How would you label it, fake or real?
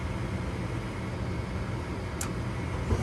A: real